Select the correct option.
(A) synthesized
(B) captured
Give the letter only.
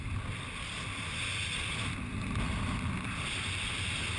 B